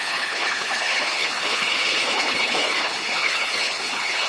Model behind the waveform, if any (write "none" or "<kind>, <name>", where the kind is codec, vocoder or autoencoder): codec, HILCodec